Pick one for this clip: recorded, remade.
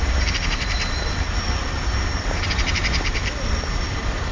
remade